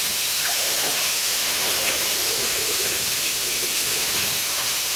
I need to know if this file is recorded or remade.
remade